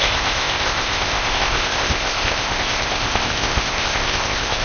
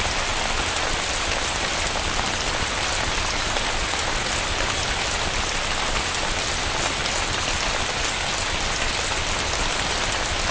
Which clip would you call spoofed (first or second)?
first